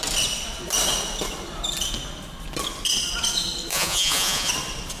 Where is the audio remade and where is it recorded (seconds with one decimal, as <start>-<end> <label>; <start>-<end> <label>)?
0.0-3.7 recorded; 3.7-4.5 remade; 4.5-5.0 recorded